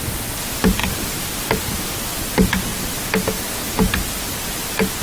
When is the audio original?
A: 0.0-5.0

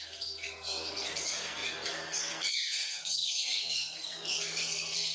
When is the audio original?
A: none

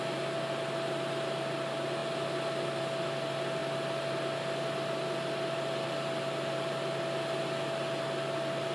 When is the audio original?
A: 0.0-8.7

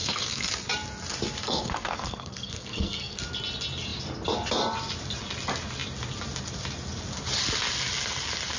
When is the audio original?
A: 0.5-1.4; 3.2-8.6